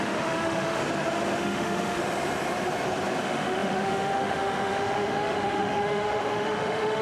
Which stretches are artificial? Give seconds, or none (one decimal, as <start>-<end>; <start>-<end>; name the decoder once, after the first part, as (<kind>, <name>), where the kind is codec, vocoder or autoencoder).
0.0-0.8 (autoencoder, DAC-VAE); 1.4-2.0; 3.2-7.0